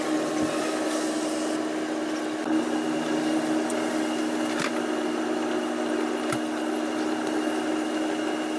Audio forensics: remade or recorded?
recorded